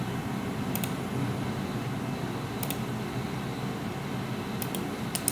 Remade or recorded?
recorded